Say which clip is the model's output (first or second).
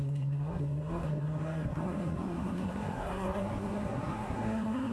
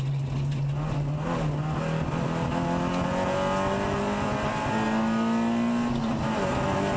first